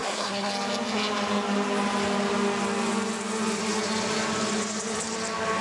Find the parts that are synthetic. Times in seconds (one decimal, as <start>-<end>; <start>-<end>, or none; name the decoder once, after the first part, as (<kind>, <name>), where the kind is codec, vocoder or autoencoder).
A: 0.0-0.5 (codec, SNAC)

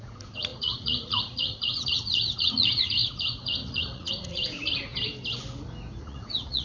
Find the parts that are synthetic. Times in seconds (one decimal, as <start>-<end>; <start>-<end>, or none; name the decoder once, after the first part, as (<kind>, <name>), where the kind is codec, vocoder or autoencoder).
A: 0.0-4.9 (vocoder, Vocos); 6.0-6.6

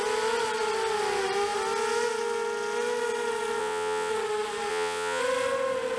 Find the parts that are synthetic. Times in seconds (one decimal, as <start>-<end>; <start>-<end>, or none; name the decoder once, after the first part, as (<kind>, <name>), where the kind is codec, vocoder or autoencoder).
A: 3.6-4.1 (vocoder, Vocos); 4.7-5.2

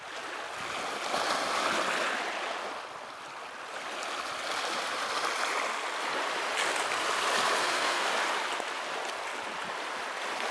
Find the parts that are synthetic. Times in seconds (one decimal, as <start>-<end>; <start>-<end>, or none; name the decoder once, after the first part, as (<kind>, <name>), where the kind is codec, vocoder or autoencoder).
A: 7.6-8.1 (codec, SNAC)